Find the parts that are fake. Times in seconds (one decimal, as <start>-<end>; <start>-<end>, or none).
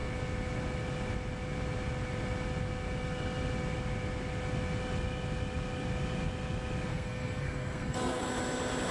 6.9-8.2